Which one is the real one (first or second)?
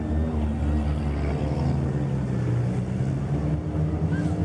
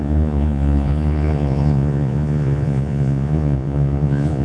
first